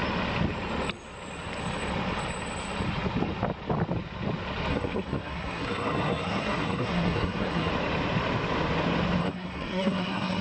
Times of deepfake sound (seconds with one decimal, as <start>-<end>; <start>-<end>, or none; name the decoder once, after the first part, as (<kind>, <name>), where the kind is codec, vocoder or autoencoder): 4.7-7.7 (codec, SNAC); 9.2-10.4